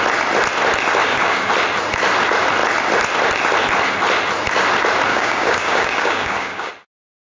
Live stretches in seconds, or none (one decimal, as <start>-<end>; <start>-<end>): 0.0-1.0; 1.5-5.1; 6.7-7.2